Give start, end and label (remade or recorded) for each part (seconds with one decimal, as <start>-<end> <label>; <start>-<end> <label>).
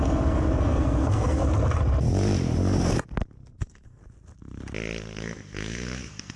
0.0-1.4 remade; 1.4-3.6 recorded; 3.6-4.0 remade; 4.0-5.2 recorded; 5.2-6.4 remade